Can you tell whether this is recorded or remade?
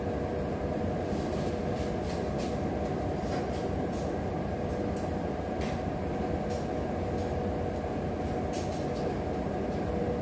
recorded